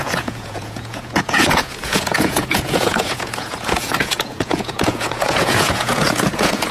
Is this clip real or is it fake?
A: fake